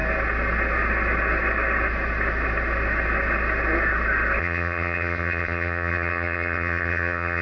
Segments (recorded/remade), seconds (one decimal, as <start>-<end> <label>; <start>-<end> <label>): 0.0-4.4 recorded; 4.4-7.4 remade